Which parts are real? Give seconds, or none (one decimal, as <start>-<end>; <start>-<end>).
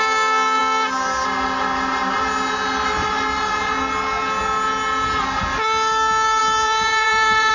0.0-6.4